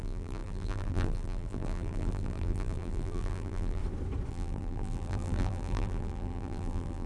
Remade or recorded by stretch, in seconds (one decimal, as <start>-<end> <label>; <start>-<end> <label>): 0.0-3.8 remade; 3.8-4.3 recorded; 4.3-7.1 remade